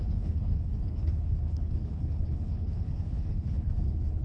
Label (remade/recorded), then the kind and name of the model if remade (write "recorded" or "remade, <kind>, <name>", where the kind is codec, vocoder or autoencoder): remade, codec, HILCodec